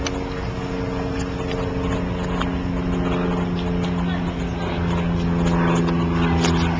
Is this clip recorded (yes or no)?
yes